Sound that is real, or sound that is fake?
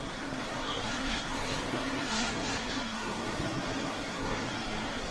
fake